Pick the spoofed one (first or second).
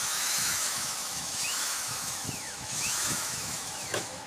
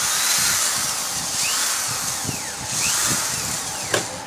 first